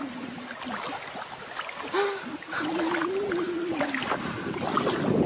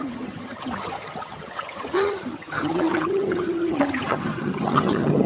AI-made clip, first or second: second